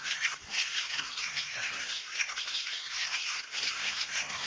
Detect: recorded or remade remade